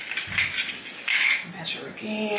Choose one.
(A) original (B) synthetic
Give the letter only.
A